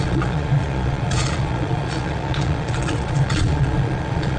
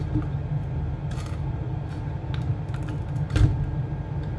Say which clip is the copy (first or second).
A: first